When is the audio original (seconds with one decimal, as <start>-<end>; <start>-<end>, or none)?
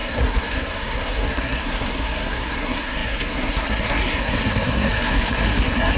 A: none